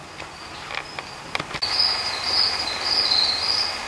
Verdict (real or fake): real